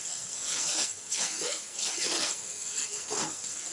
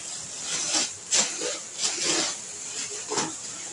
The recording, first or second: second